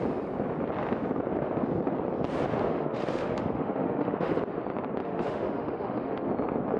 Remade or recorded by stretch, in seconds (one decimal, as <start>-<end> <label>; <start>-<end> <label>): 0.0-2.7 recorded; 2.7-4.4 remade; 4.4-5.0 recorded; 5.0-6.3 remade; 6.3-6.8 recorded